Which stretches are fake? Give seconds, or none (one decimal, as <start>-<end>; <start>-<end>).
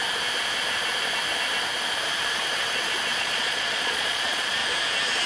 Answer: 3.2-4.6